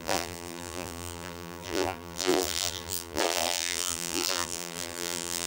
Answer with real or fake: fake